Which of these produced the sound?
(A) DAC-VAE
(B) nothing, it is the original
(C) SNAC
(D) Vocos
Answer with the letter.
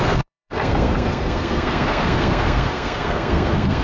C